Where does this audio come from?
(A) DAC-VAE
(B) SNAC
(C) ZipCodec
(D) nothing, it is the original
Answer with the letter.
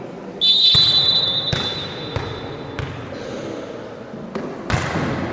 D